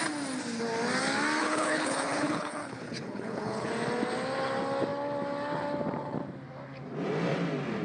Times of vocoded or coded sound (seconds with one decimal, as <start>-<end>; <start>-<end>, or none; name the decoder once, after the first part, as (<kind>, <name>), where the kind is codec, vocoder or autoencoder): 1.4-3.7 (codec, HILCodec)